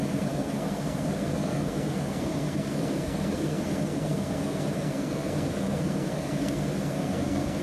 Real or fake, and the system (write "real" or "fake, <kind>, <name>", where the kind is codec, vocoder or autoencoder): fake, codec, SNAC